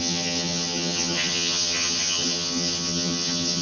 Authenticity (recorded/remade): remade